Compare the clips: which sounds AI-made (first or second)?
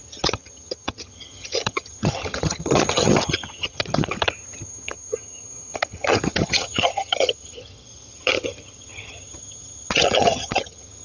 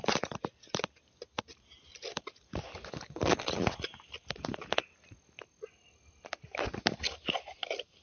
first